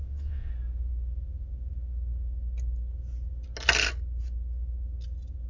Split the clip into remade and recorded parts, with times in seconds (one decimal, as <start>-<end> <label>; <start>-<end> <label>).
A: 0.0-0.5 remade; 0.5-5.5 recorded